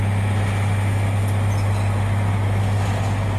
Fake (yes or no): no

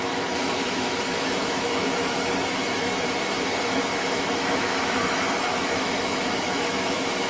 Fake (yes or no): yes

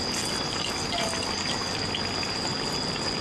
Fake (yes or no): no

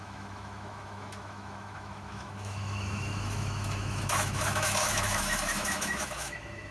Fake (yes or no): yes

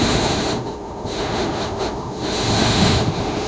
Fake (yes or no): yes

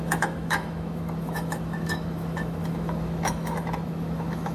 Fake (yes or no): yes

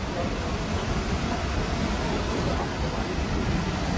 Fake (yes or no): no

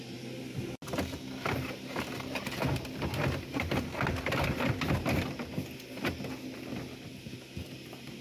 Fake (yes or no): no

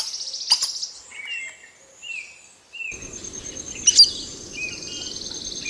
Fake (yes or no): no